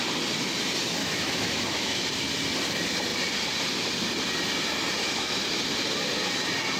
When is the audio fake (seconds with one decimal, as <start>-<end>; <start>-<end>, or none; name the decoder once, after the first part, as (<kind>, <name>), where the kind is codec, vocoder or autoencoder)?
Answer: 1.0-2.1 (autoencoder, DAC-VAE); 5.0-5.5